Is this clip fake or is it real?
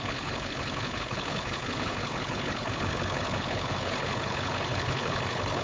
fake